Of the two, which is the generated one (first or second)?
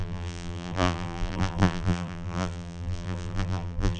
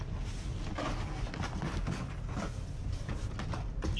first